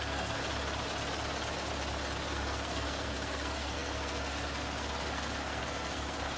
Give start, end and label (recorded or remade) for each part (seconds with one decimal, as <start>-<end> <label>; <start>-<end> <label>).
0.0-0.4 remade; 0.4-2.3 recorded; 2.3-6.4 remade